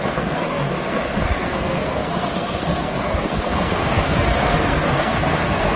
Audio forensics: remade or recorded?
remade